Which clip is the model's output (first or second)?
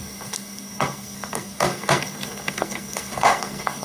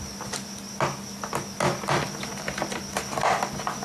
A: first